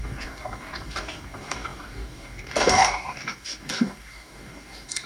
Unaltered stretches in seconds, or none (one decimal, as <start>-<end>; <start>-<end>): none